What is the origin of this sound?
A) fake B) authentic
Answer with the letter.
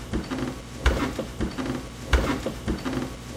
B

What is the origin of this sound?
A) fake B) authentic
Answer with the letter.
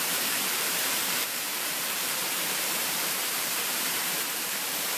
A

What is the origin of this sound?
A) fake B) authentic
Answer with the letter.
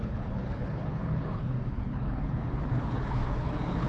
A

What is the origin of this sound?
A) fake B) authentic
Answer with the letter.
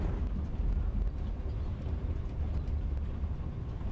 B